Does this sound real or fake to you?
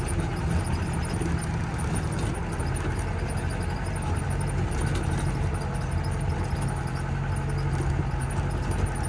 real